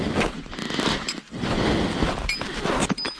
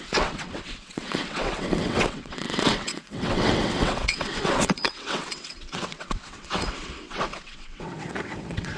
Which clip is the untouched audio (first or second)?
first